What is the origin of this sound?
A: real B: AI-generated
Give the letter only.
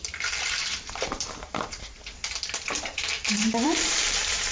B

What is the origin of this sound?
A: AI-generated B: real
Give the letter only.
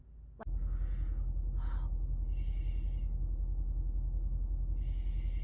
B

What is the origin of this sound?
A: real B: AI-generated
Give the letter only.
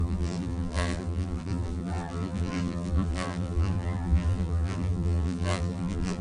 B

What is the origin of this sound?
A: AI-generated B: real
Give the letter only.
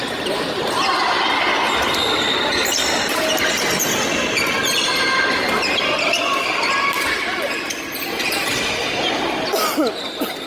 B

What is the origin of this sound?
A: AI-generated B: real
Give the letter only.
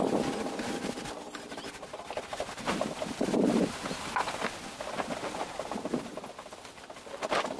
B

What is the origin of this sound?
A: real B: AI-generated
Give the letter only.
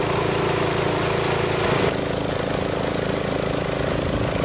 A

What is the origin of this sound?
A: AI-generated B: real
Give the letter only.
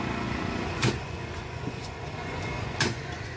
A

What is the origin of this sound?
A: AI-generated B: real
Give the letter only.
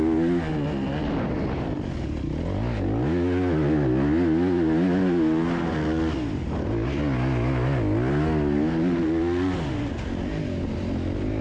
B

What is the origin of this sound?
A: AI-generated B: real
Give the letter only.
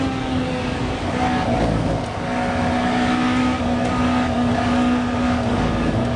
A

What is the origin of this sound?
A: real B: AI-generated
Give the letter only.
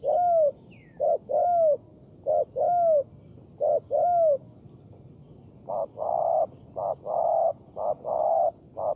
A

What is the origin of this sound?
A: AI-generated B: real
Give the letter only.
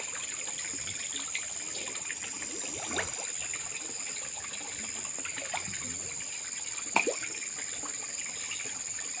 B